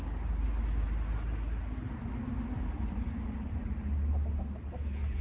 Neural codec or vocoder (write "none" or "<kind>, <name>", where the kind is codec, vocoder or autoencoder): none